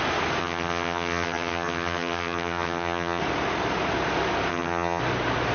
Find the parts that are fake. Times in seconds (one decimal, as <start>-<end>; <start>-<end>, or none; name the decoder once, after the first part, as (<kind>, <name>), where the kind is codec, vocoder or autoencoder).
0.4-3.2 (vocoder, HiFi-GAN); 4.5-5.0

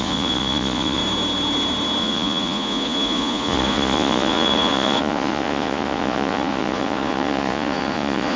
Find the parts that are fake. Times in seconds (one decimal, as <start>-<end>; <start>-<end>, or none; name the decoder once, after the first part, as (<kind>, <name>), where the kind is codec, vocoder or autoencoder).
0.0-1.0 (vocoder, Vocos); 2.0-8.4

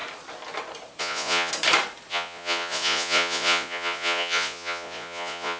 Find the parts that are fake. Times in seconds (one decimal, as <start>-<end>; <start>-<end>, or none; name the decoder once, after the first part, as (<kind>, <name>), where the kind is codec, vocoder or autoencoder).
1.0-1.5 (vocoder, Vocos); 2.1-5.6

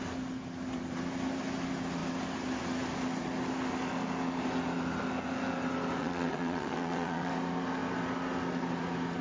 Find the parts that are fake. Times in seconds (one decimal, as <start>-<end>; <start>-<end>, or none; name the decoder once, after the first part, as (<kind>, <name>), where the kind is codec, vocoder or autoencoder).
6.0-7.3 (vocoder, WaveNeXt)

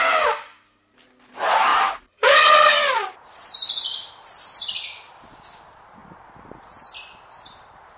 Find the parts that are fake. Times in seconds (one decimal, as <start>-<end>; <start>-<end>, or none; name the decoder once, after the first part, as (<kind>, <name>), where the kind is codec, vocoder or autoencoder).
1.7-4.1 (vocoder, BigVGAN v2)

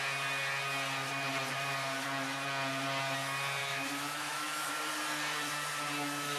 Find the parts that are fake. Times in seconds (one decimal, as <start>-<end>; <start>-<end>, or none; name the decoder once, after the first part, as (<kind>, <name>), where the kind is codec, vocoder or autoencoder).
3.6-4.7 (autoencoder, DAC-VAE)

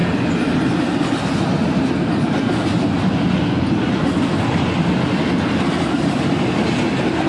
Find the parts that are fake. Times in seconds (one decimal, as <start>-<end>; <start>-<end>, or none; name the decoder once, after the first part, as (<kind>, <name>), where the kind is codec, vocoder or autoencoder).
none